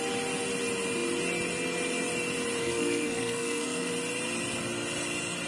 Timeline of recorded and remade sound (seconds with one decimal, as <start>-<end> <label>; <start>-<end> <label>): 0.0-2.6 recorded; 2.6-3.9 remade; 3.9-5.5 recorded

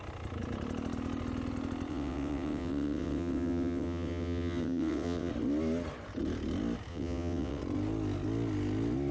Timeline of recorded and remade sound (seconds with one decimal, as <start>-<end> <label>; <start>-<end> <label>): 0.0-1.9 recorded; 1.9-5.3 remade; 5.3-6.9 recorded; 6.9-7.6 remade; 7.6-9.1 recorded

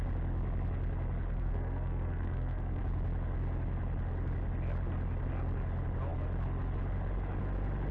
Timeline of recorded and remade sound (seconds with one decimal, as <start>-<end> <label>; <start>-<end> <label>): 0.0-1.3 recorded; 1.3-2.8 remade; 2.8-7.9 recorded

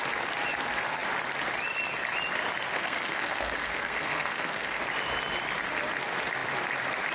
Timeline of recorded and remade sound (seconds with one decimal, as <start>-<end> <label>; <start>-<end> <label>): 0.0-2.7 recorded; 2.7-4.8 remade; 4.8-7.1 recorded

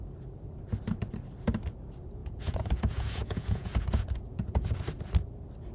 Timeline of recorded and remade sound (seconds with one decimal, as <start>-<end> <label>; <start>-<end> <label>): 0.0-2.2 recorded; 2.2-4.7 remade; 4.7-5.7 recorded

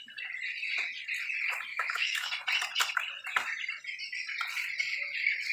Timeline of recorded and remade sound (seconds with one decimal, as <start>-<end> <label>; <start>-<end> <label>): 0.0-1.7 recorded; 1.7-2.3 remade; 2.3-5.5 recorded

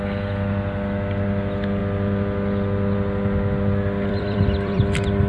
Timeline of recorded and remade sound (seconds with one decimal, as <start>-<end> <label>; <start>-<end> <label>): 0.0-1.8 recorded; 1.8-5.3 remade